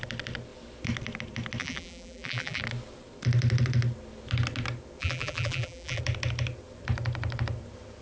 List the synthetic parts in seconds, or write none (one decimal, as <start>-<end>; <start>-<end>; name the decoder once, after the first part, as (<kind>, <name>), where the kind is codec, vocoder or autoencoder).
1.6-2.6 (vocoder, BigVGAN v2); 5.0-6.0